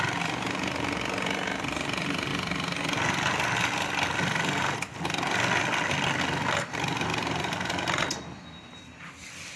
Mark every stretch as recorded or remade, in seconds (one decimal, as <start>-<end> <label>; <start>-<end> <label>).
0.0-7.1 recorded; 7.1-8.4 remade; 8.4-9.6 recorded